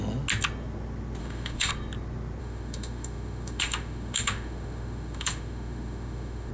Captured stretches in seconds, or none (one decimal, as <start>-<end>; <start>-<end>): 0.0-1.2; 1.7-2.4